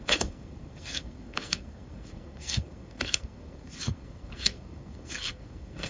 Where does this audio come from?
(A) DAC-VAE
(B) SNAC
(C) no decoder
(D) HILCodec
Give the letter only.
B